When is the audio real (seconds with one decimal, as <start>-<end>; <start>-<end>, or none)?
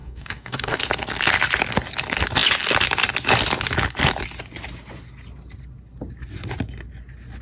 0.8-7.4